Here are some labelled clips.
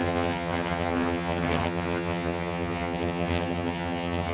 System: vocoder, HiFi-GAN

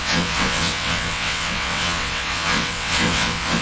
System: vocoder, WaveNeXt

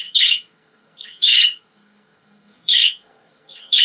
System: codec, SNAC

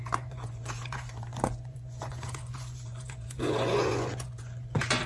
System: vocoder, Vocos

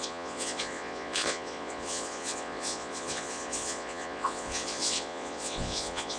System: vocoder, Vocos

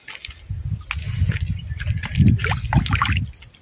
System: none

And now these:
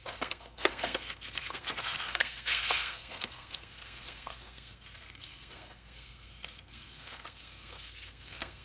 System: codec, SNAC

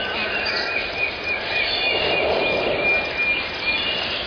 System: none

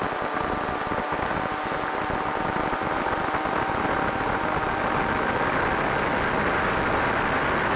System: none